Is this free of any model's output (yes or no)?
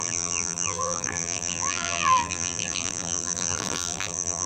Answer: no